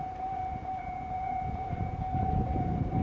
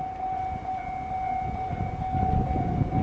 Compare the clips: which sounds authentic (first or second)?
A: second